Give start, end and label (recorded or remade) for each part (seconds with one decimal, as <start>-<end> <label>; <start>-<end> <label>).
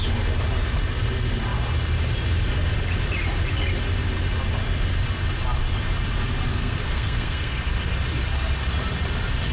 0.0-6.5 recorded; 6.5-7.6 remade; 7.6-9.5 recorded